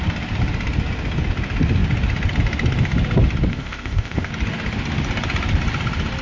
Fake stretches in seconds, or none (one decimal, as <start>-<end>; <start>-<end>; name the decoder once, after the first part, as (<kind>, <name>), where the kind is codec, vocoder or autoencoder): 3.5-4.3 (codec, ZipCodec)